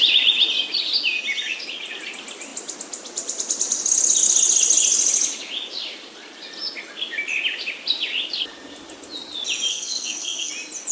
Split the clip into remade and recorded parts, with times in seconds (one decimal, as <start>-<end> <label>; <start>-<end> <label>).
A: 0.0-9.7 recorded; 9.7-10.5 remade; 10.5-10.9 recorded